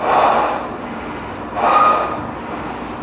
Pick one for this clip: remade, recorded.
recorded